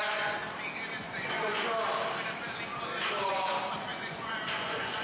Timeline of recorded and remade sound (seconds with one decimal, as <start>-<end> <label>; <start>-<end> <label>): 0.0-0.4 remade; 0.4-1.0 recorded; 1.0-1.7 remade; 1.7-3.0 recorded; 3.0-5.0 remade